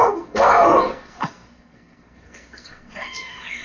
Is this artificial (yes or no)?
yes